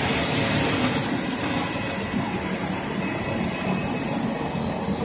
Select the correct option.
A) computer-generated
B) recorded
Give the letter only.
B